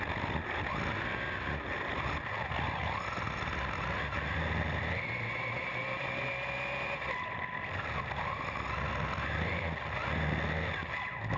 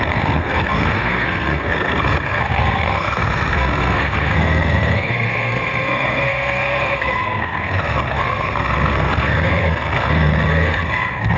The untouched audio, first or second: first